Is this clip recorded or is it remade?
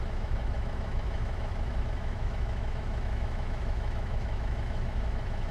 remade